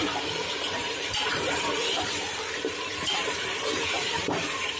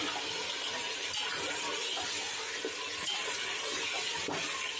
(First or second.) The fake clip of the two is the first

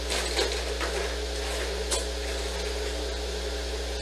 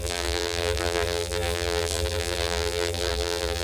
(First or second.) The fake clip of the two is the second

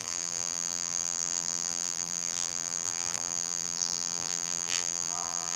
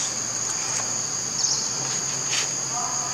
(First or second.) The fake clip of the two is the first